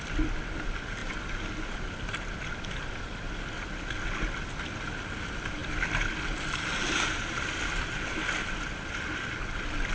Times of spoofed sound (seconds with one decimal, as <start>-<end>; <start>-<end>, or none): none